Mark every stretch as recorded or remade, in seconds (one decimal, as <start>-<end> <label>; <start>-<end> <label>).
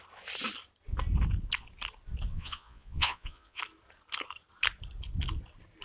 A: 0.0-2.3 recorded; 2.3-3.6 remade; 3.6-5.8 recorded